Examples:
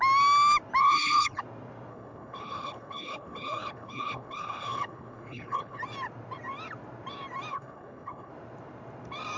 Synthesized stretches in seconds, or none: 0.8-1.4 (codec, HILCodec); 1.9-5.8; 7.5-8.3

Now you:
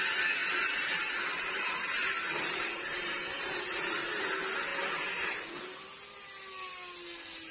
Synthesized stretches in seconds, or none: 0.4-4.2 (vocoder, BigVGAN v2); 4.7-5.6

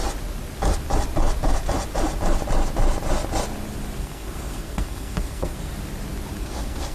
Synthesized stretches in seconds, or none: 4.0-5.7 (codec, SNAC); 6.4-6.9

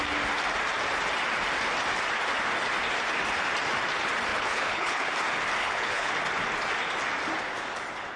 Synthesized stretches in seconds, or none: 4.3-5.1 (codec, HILCodec); 5.6-6.1

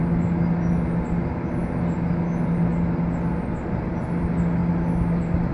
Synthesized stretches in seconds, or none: none

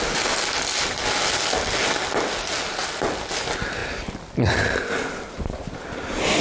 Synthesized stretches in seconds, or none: none

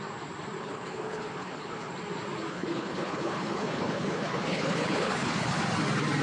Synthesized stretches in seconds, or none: 0.6-1.9 (codec, HILCodec); 2.5-5.6

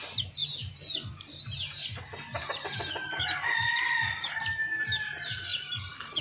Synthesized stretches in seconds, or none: none